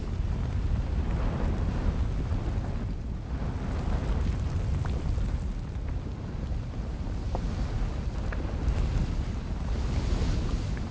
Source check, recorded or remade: recorded